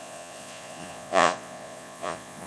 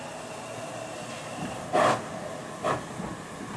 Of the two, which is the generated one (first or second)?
first